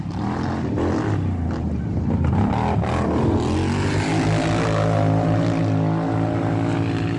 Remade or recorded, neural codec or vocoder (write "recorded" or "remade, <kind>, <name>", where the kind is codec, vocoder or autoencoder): recorded